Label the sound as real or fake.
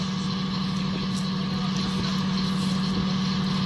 real